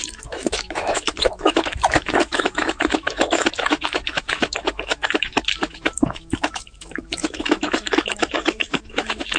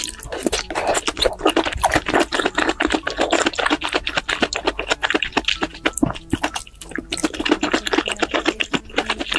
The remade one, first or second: first